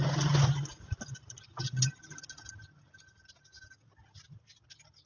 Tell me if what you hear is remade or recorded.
recorded